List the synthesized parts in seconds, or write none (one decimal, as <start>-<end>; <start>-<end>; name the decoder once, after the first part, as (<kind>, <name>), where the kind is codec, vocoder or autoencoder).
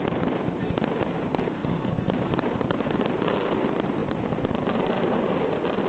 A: 1.6-3.5 (vocoder, BigVGAN v2); 4.0-5.2